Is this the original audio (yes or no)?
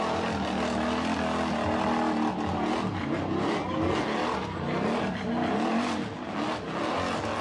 yes